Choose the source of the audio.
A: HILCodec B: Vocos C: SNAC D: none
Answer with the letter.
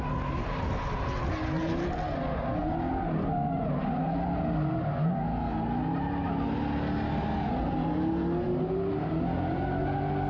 D